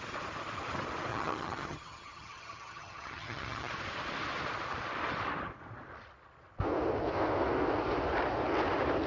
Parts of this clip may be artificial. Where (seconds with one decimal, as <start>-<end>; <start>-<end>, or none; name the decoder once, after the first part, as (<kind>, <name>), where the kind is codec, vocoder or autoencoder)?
1.1-3.7 (vocoder, HiFi-GAN)